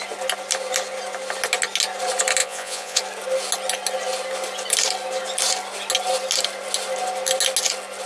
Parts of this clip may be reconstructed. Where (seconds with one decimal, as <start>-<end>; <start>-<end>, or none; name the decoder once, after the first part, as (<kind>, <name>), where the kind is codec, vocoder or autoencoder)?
2.4-3.0 (vocoder, Vocos)